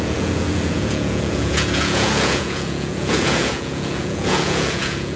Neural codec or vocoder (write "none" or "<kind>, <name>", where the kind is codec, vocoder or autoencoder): vocoder, Vocos